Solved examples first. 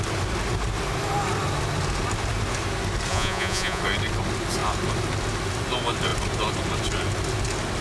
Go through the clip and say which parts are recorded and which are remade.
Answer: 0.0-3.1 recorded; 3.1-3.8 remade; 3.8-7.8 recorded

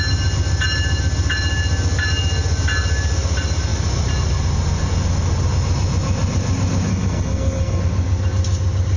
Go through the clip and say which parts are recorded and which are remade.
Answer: 0.0-6.9 recorded; 6.9-7.8 remade; 7.8-9.0 recorded

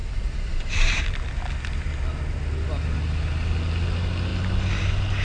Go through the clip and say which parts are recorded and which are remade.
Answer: 0.0-1.0 remade; 1.0-5.2 recorded

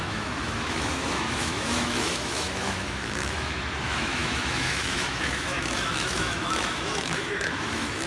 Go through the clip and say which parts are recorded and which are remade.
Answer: 0.0-8.1 remade

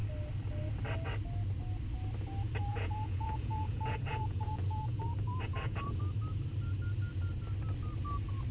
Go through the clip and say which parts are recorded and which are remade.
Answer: 0.0-2.6 recorded; 2.6-6.0 remade; 6.0-8.5 recorded

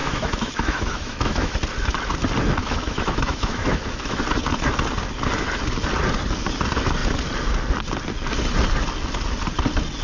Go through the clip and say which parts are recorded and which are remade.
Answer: 0.0-1.5 remade; 1.5-2.6 recorded; 2.6-4.2 remade; 4.2-10.0 recorded